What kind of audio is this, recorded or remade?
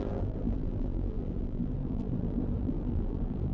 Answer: remade